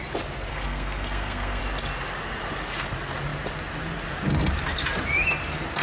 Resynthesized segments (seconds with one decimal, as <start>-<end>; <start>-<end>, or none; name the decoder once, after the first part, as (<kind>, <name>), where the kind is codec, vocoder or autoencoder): 0.5-1.6 (codec, SNAC)